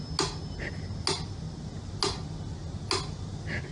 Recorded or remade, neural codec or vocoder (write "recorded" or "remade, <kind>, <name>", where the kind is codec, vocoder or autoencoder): recorded